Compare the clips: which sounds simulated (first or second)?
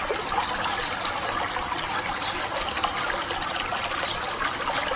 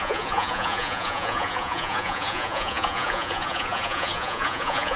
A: second